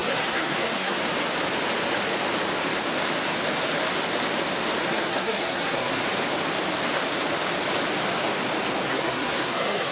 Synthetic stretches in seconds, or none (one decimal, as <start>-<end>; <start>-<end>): 0.0-0.9; 4.8-6.0; 8.9-9.9

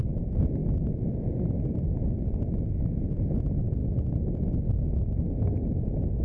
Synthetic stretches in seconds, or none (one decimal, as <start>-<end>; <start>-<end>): none

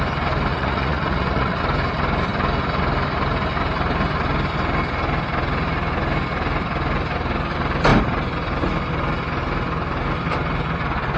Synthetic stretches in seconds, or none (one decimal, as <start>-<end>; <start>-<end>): 0.5-1.6

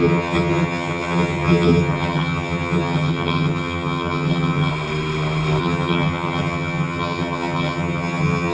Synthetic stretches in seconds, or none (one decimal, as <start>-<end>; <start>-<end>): 0.0-4.7; 5.6-8.5

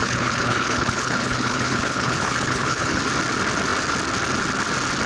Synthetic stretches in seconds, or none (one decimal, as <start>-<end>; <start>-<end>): 0.0-3.0